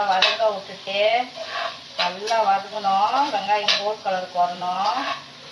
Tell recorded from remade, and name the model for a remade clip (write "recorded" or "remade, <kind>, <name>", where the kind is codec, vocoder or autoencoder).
remade, vocoder, Vocos